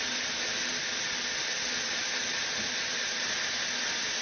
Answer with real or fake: real